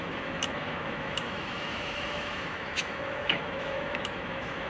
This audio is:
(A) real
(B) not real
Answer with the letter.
B